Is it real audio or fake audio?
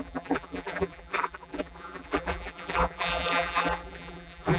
fake